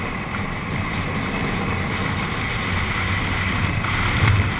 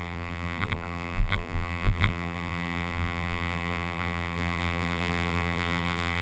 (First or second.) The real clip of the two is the first